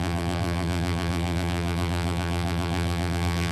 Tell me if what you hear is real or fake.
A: fake